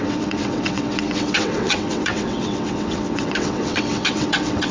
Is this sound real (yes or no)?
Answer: no